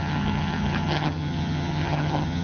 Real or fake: fake